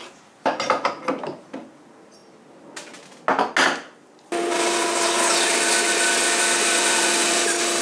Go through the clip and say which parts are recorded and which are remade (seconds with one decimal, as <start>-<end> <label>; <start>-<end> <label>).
0.0-7.8 recorded